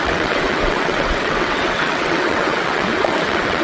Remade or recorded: remade